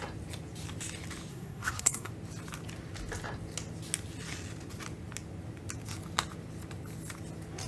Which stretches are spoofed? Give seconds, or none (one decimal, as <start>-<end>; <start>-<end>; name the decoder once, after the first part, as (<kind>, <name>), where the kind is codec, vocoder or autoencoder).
1.3-2.1 (codec, SNAC)